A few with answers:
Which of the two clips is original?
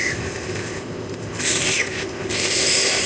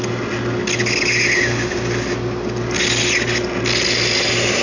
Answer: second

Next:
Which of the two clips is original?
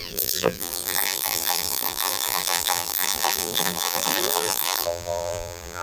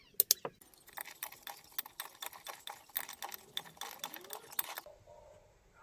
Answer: second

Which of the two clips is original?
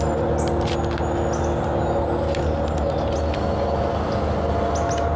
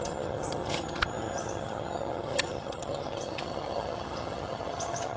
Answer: first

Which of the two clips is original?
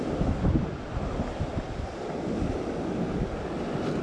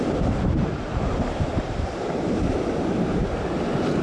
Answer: first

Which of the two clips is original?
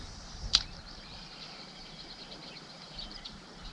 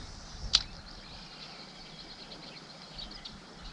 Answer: second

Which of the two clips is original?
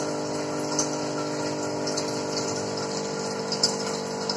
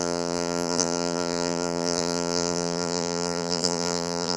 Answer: first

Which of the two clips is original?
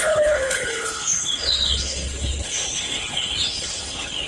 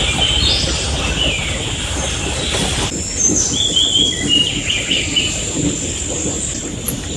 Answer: second